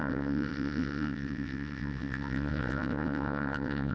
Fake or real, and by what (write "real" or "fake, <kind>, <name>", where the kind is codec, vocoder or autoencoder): fake, vocoder, WaveNeXt